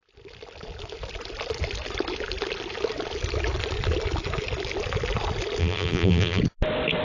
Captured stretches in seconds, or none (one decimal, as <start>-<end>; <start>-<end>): 0.0-5.6; 6.4-7.0